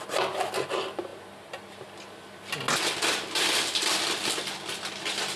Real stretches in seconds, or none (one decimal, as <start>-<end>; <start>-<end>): 0.0-5.4